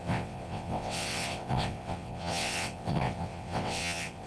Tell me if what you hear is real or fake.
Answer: fake